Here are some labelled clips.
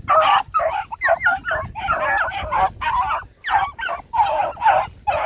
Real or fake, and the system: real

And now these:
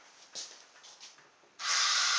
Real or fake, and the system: real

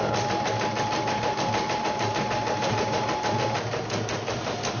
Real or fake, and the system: real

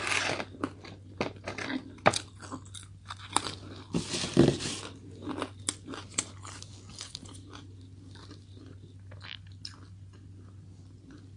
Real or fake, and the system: real